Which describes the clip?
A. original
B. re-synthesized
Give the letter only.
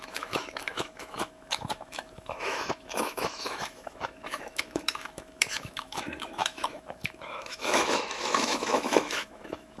B